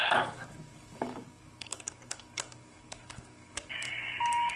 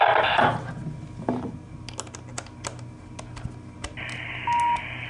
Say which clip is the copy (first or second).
first